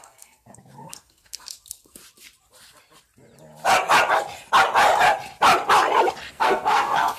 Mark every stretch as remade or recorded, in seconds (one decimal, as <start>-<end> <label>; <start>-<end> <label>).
0.0-2.0 remade; 2.0-6.3 recorded; 6.3-7.2 remade